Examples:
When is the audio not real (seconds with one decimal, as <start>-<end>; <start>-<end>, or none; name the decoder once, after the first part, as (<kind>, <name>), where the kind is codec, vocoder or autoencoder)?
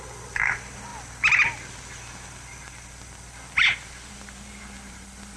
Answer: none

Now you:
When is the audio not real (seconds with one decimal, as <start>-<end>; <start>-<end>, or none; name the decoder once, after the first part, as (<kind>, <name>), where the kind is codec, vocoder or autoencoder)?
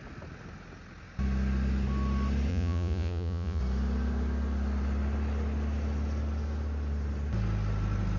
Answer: 2.5-3.6 (vocoder, Vocos)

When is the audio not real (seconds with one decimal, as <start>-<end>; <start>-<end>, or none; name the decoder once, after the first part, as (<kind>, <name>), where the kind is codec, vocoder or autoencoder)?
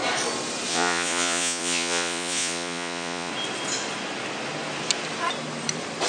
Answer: 0.7-3.3 (vocoder, Vocos)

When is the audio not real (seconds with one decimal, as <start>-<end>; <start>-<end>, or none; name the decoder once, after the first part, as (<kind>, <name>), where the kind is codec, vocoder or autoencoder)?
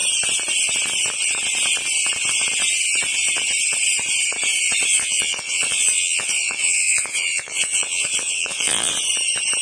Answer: 4.9-8.9 (vocoder, Vocos)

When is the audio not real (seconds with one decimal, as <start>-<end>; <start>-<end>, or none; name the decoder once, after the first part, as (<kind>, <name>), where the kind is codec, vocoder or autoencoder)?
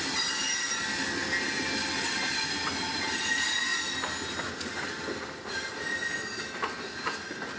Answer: none